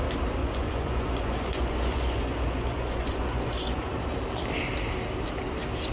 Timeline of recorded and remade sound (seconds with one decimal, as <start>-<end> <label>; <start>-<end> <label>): 0.0-0.4 recorded; 0.4-3.9 remade; 3.9-5.9 recorded